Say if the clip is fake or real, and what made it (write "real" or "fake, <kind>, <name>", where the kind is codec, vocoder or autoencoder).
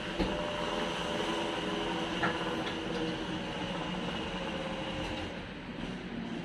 real